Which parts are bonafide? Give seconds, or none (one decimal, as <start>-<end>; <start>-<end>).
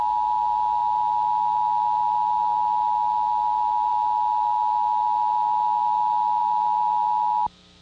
0.0-7.8